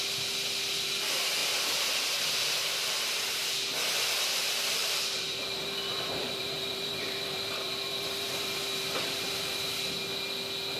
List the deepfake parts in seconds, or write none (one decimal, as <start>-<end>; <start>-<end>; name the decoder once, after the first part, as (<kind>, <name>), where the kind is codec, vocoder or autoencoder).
1.4-2.0 (vocoder, BigVGAN v2); 4.8-9.5